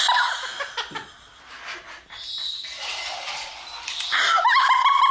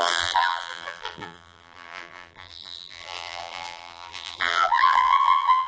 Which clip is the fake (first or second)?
second